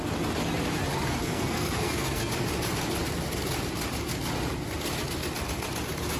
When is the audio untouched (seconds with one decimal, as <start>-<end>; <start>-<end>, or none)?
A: 0.0-1.2; 2.3-6.2